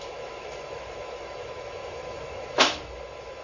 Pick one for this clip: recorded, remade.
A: remade